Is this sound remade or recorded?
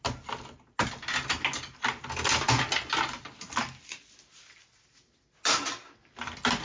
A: recorded